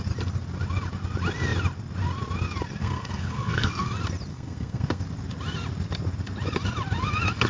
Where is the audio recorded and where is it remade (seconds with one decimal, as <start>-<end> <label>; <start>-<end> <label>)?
0.0-2.8 recorded; 2.8-3.9 remade; 3.9-4.3 recorded; 4.3-5.0 remade; 5.0-7.5 recorded